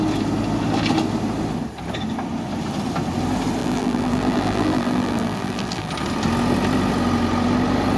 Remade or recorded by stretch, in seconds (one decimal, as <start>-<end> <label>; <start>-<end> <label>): 0.0-3.6 recorded; 3.6-5.9 remade; 5.9-8.0 recorded